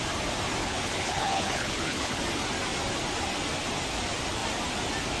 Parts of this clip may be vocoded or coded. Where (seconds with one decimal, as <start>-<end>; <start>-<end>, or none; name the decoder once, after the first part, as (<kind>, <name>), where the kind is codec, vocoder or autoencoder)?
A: 0.6-2.2 (codec, HILCodec)